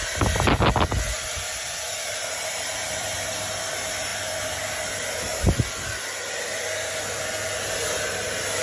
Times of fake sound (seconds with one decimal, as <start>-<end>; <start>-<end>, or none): 1.5-3.5